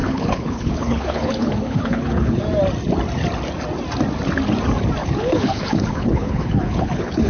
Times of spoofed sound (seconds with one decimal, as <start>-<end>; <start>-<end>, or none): 0.0-2.4; 5.0-7.3